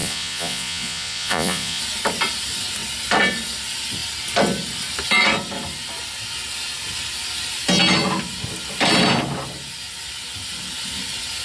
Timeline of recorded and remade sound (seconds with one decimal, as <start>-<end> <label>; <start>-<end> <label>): 0.0-1.8 remade; 1.8-11.4 recorded

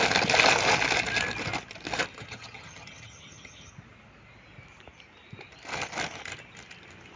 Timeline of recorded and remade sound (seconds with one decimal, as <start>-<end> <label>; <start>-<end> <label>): 0.0-2.1 recorded; 2.1-3.7 remade; 3.7-7.2 recorded